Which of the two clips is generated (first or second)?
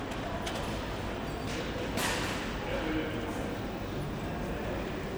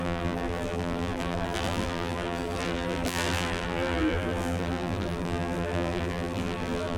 second